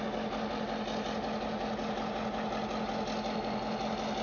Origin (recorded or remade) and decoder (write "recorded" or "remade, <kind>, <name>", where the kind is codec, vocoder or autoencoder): recorded